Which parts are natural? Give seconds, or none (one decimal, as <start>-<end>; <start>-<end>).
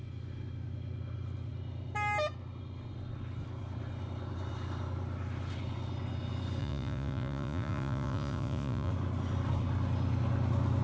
0.0-6.6; 8.9-10.8